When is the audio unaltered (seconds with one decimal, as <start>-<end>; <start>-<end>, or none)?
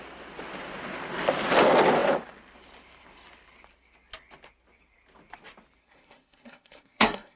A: 0.0-5.8